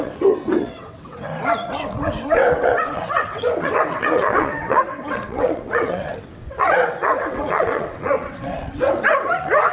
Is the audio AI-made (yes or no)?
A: yes